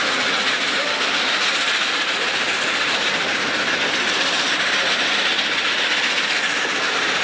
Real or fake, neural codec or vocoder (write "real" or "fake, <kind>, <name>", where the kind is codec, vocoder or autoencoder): real